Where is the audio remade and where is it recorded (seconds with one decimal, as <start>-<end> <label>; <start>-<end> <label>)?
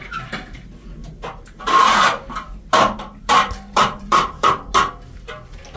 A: 0.0-1.0 recorded; 1.0-4.5 remade; 4.5-5.8 recorded